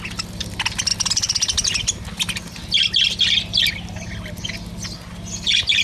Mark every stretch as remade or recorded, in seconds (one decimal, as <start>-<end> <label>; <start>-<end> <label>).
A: 0.0-5.8 recorded